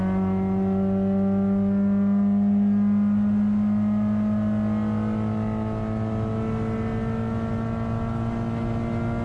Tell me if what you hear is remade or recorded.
recorded